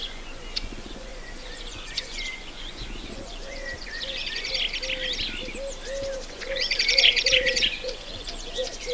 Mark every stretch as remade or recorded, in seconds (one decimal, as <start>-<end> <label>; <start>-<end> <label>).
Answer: 0.0-4.5 remade; 4.5-6.3 recorded; 6.3-8.9 remade